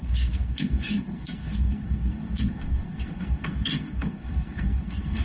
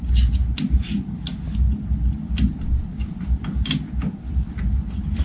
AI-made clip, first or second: first